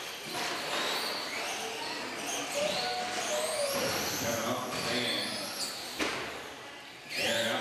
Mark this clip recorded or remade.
recorded